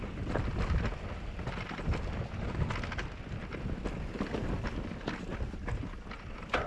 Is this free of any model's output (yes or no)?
yes